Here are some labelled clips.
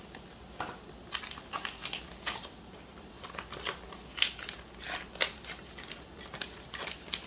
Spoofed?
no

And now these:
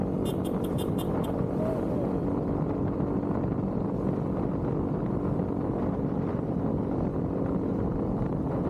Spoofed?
no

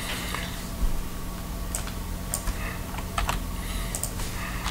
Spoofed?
no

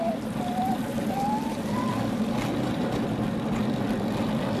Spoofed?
no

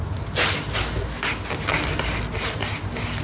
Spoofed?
no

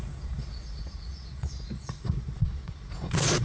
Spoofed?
yes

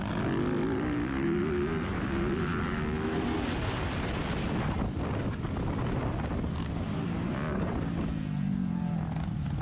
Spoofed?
no